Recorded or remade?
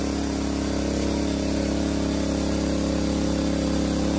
recorded